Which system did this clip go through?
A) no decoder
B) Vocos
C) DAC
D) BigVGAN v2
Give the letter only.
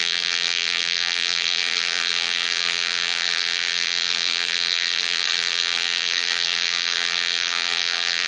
D